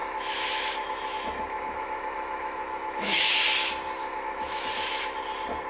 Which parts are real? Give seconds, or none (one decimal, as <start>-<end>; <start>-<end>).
3.4-4.0; 5.2-5.7